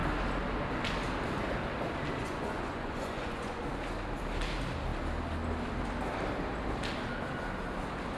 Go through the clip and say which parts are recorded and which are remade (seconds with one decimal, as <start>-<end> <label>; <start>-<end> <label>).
0.0-2.2 recorded; 2.2-3.6 remade; 3.6-8.2 recorded